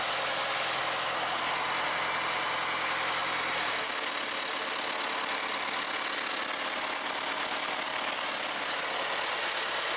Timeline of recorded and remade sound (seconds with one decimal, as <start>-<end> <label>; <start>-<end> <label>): 0.0-10.0 recorded